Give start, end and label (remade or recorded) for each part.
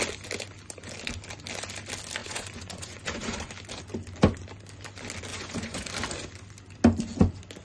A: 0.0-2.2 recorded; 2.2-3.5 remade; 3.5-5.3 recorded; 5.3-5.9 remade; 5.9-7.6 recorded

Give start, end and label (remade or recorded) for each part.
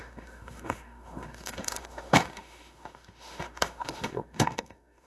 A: 0.0-5.1 remade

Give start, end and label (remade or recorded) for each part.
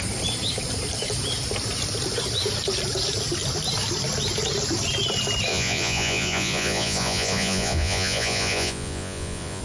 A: 0.0-5.5 recorded; 5.5-9.6 remade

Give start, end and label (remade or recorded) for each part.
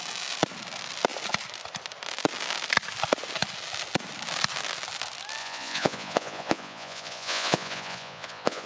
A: 0.0-5.4 recorded; 5.4-8.7 remade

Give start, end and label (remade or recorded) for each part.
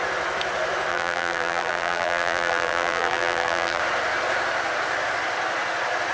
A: 0.0-0.9 recorded; 0.9-3.8 remade; 3.8-6.1 recorded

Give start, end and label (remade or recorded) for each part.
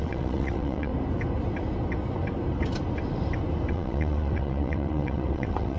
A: 0.0-0.9 remade; 0.9-3.7 recorded; 3.7-5.8 remade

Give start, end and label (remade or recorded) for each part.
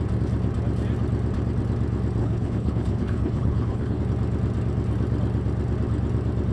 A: 0.0-2.2 recorded; 2.2-4.0 remade; 4.0-6.5 recorded